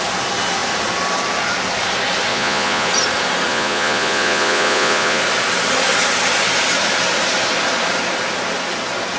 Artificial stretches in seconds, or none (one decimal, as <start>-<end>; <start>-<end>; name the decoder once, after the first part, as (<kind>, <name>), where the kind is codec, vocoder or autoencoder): 2.3-2.9 (vocoder, Vocos); 3.5-5.2